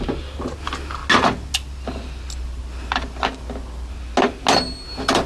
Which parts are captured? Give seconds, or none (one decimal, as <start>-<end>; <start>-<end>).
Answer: 0.0-5.3